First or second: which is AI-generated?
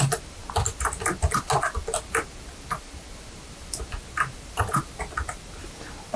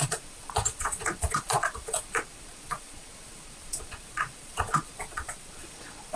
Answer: second